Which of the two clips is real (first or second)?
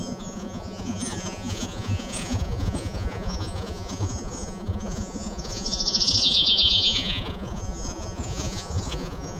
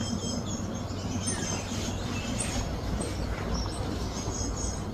second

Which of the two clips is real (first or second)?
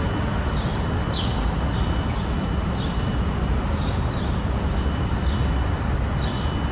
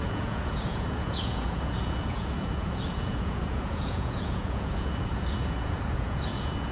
first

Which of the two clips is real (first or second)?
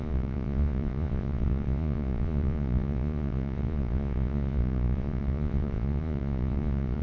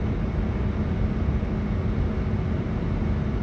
second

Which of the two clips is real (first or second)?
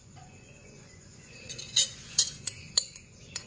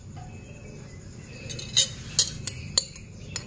second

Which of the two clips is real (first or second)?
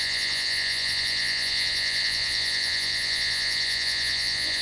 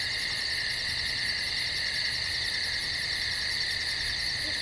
second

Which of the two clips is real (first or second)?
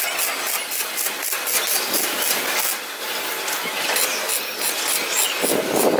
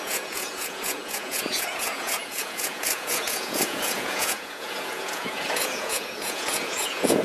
first